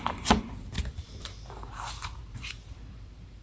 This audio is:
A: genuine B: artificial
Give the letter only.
B